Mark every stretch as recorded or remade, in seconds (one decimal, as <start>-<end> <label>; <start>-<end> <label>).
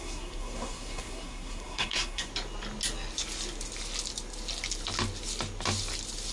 0.0-2.3 remade; 2.3-6.3 recorded